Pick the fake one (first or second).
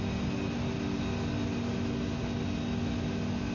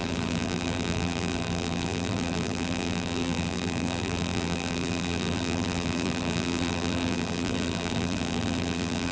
second